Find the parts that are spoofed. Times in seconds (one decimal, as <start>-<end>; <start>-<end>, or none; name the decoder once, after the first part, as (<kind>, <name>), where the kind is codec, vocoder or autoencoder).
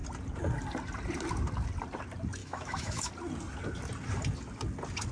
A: 2.4-3.1 (autoencoder, DAC-VAE)